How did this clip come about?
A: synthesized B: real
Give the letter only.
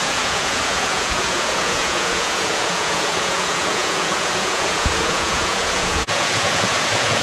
A